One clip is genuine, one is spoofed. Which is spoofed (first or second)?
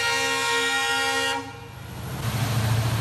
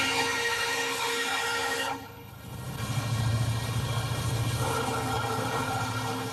second